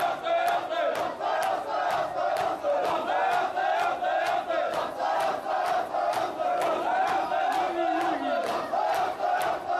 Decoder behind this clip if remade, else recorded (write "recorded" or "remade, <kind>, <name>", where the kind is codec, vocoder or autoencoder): recorded